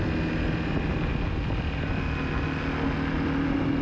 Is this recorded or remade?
recorded